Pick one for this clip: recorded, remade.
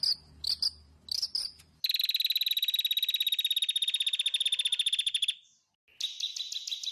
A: recorded